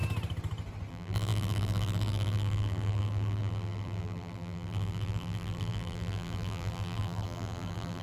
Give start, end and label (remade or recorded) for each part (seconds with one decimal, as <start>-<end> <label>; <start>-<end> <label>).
0.0-0.9 recorded; 0.9-8.0 remade